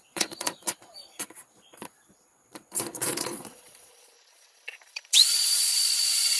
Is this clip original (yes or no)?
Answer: no